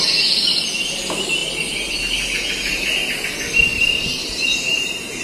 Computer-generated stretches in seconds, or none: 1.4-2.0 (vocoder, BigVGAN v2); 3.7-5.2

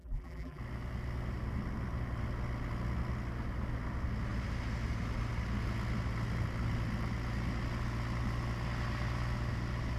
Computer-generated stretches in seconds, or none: 0.0-0.6 (vocoder, BigVGAN v2)

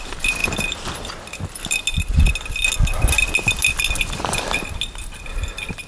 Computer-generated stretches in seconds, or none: none

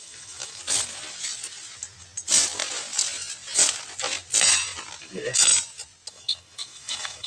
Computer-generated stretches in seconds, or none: 0.0-0.6 (autoencoder, DAC-VAE); 5.0-5.5; 6.1-7.3

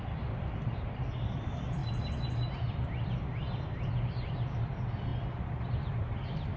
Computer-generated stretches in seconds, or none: 0.0-1.8 (vocoder, BigVGAN v2); 2.7-5.1; 5.7-6.6

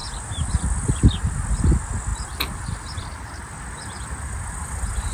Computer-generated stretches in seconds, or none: 2.1-2.6 (vocoder, BigVGAN v2)